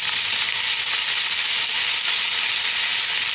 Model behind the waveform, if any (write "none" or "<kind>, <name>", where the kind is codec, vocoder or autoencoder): none